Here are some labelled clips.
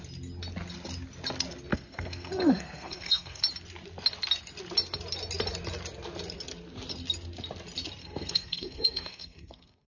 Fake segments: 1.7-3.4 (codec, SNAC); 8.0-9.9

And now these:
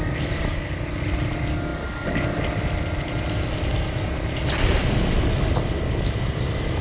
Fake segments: none

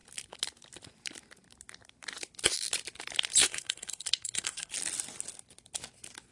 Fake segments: 3.4-4.7 (codec, SNAC)

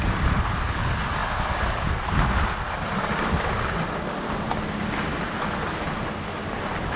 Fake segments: none

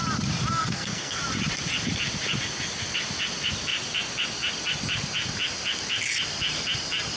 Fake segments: 0.5-1.2 (codec, SNAC)

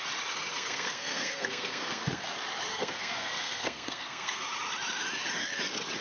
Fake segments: 0.5-2.3 (codec, SNAC); 2.7-4.4